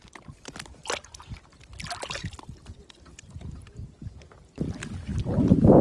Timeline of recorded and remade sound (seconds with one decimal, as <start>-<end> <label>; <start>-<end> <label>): 0.0-5.8 recorded